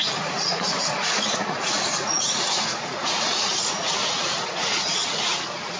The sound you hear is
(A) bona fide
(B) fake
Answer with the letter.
B